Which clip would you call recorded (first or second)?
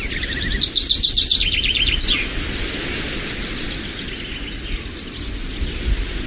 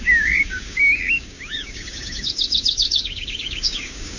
first